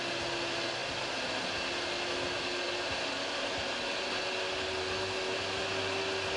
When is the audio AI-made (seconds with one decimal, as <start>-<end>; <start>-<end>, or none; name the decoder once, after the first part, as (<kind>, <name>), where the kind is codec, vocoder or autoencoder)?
none